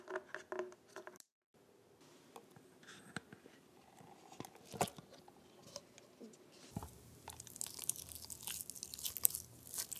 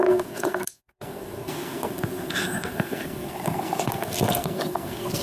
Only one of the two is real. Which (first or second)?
first